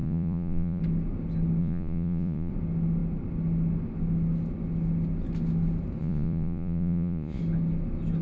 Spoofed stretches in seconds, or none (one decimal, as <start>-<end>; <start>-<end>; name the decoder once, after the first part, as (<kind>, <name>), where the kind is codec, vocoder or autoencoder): 0.0-0.8 (vocoder, Vocos); 1.6-2.5; 6.0-7.4

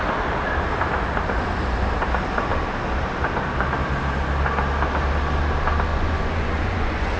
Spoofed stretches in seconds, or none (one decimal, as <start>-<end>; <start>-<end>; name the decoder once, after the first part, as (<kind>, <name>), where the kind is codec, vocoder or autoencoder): 5.9-7.2 (vocoder, Vocos)